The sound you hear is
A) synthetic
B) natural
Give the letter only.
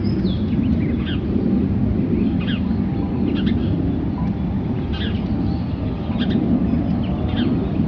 B